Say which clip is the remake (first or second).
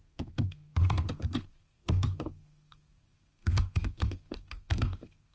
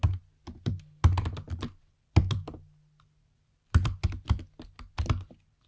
first